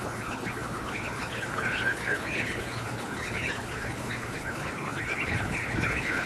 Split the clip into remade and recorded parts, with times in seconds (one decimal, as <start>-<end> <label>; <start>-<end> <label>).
0.0-6.3 remade